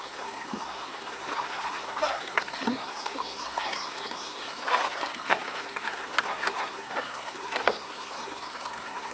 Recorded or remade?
remade